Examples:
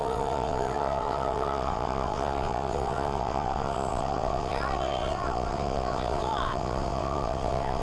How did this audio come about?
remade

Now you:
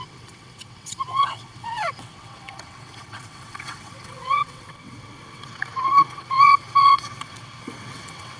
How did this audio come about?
remade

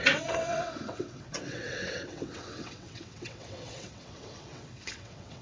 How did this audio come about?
remade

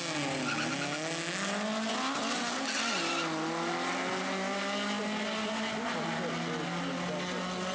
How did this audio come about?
recorded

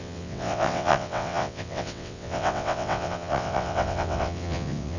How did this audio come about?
remade